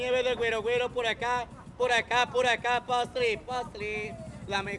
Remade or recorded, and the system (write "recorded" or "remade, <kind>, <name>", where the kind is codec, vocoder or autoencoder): recorded